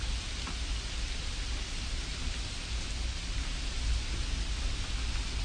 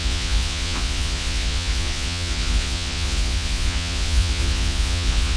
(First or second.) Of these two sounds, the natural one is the first